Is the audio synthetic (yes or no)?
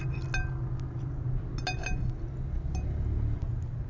no